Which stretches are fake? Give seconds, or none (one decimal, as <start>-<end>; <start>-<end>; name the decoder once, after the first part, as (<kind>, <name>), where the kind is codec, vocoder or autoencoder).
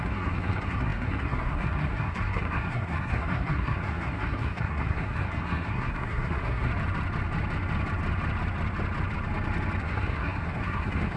0.0-6.7 (codec, SNAC); 9.8-11.2